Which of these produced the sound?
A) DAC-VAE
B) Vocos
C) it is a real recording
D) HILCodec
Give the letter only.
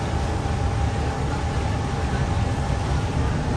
C